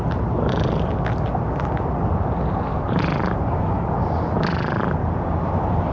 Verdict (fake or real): real